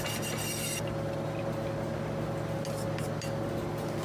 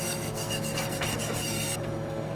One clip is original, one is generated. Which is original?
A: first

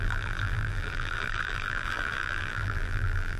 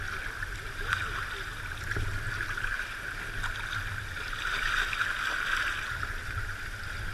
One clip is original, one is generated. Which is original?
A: second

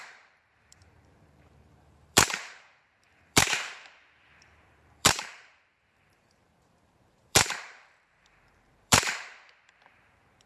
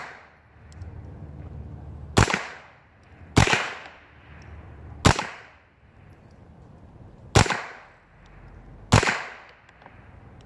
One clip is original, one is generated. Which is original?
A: second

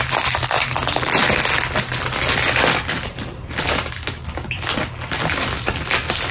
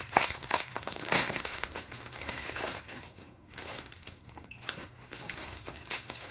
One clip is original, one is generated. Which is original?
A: first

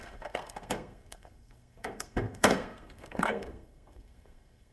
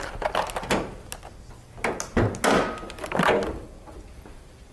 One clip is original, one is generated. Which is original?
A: second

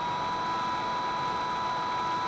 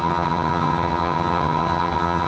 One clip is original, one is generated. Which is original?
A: first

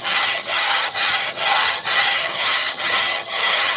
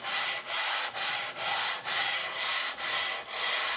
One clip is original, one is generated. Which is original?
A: second